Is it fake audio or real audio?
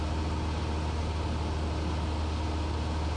real